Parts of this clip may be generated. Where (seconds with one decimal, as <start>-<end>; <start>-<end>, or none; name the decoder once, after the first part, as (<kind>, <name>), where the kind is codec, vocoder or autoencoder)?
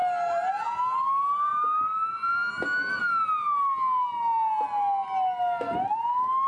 none